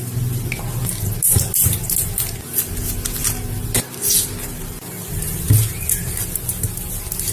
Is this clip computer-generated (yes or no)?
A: no